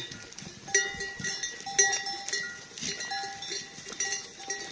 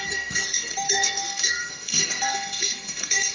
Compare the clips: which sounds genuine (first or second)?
first